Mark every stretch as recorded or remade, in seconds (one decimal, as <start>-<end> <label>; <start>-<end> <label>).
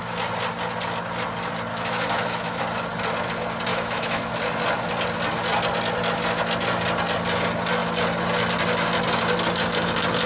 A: 0.0-1.7 recorded; 1.7-2.6 remade; 2.6-3.7 recorded; 3.7-4.4 remade; 4.4-10.3 recorded